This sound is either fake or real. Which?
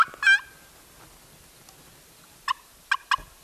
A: real